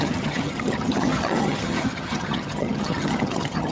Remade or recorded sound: remade